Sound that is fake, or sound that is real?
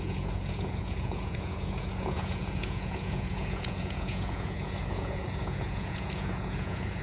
fake